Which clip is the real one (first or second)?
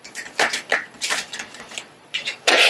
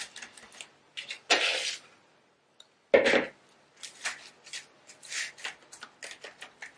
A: second